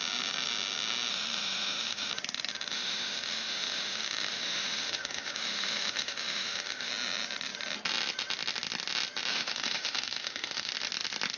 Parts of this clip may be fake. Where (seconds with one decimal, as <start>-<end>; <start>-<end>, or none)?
1.1-2.1; 2.7-6.9; 9.3-10.7

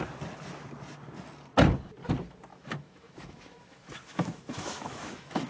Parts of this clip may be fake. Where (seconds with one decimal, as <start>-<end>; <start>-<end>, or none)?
2.5-5.5

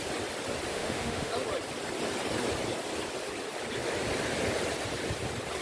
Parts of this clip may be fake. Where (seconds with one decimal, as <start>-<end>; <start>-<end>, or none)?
0.7-1.3

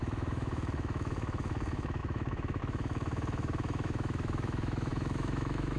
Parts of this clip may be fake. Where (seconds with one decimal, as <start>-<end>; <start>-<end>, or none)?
0.0-5.8

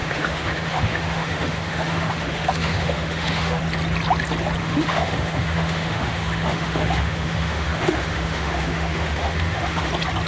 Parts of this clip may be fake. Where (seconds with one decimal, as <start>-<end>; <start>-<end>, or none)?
0.0-3.6; 4.6-9.9

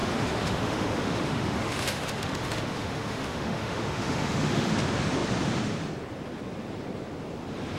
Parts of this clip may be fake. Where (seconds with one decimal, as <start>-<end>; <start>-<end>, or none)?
0.0-4.7

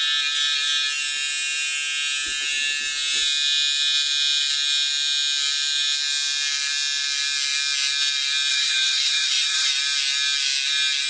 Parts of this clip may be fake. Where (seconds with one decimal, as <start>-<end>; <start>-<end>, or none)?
8.5-9.7